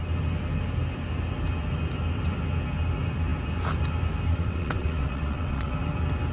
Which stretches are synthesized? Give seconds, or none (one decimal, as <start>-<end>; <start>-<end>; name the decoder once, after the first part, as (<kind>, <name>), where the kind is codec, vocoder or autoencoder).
4.3-5.7 (vocoder, WaveNeXt)